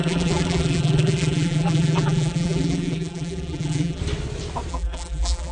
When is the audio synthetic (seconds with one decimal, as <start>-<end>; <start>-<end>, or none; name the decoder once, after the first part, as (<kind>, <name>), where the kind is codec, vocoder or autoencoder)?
0.0-4.0 (vocoder, BigVGAN v2); 4.7-5.5